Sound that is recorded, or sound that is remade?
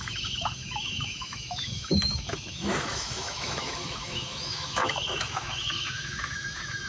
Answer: remade